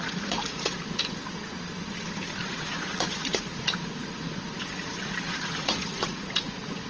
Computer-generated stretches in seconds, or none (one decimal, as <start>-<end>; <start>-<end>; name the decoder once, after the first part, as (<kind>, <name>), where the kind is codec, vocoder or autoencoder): 0.0-1.2 (vocoder, Vocos); 2.4-6.9